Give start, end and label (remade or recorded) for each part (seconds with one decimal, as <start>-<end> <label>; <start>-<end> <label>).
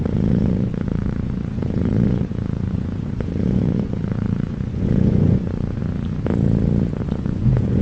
0.0-5.8 remade; 5.8-7.0 recorded; 7.0-7.8 remade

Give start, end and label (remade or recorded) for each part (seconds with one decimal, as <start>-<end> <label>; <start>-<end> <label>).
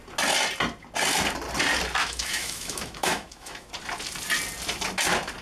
0.0-2.0 recorded; 2.0-3.7 remade; 3.7-5.4 recorded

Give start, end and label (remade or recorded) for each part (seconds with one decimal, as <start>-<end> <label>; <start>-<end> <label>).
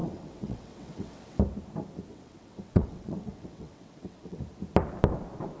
0.0-1.4 remade; 1.4-2.1 recorded; 2.1-4.4 remade; 4.4-5.6 recorded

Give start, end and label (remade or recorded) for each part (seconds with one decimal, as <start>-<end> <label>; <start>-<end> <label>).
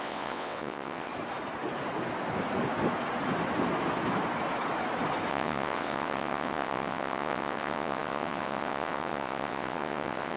0.0-1.1 remade; 1.1-5.3 recorded; 5.3-10.4 remade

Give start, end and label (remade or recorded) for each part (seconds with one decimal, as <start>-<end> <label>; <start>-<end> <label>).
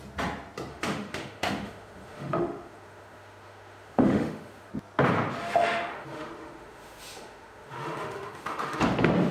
0.0-0.7 recorded; 0.7-4.7 remade; 4.7-5.4 recorded; 5.4-8.8 remade; 8.8-9.3 recorded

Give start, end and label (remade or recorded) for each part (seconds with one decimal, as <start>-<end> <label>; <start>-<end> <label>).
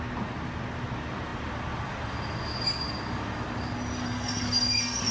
0.0-4.0 recorded; 4.0-5.1 remade